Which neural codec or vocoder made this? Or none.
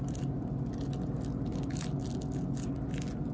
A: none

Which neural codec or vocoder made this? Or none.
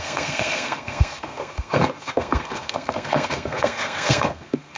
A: codec, SNAC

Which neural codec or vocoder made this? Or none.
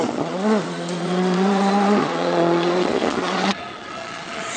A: vocoder, Vocos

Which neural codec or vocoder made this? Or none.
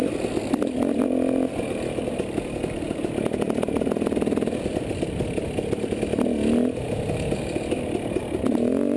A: none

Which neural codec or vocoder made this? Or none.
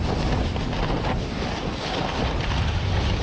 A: none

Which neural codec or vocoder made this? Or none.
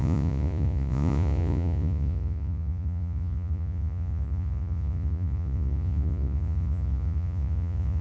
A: vocoder, Vocos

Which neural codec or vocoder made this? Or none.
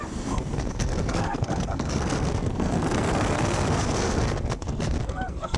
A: codec, SNAC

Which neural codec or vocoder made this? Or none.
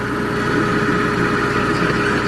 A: none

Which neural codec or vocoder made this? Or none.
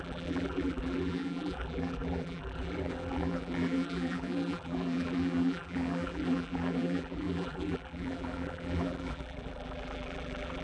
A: vocoder, BigVGAN v2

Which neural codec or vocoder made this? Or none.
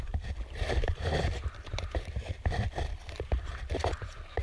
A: vocoder, BigVGAN v2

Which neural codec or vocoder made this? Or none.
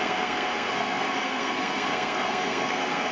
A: codec, SNAC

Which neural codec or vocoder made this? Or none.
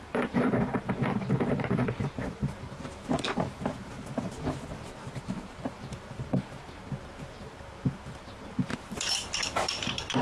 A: vocoder, BigVGAN v2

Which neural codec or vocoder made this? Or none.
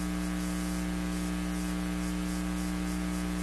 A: none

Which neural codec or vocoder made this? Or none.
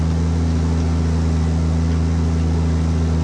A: none